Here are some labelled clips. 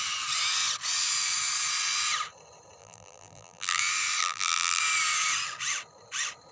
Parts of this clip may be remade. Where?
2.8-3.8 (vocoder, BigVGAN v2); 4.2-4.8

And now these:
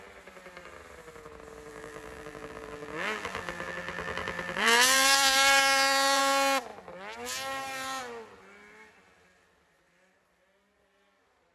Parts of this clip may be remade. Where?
1.7-6.2 (vocoder, BigVGAN v2)

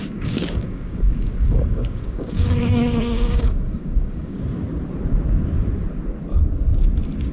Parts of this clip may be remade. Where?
0.0-4.4 (codec, DAC)

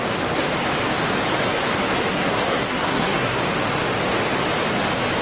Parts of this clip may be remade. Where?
2.1-3.4 (codec, SNAC)

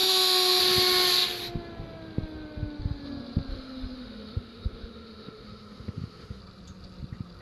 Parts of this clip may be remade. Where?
0.0-0.6 (autoencoder, DAC-VAE); 3.5-6.4